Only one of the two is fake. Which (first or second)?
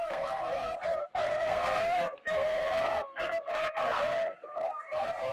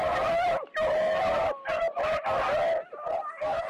first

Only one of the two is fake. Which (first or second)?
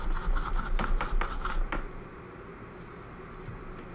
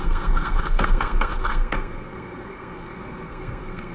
second